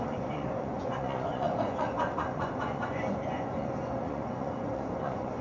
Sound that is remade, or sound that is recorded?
remade